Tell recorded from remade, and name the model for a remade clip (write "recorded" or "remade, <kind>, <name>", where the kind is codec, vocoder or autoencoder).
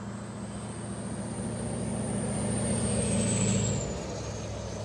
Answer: recorded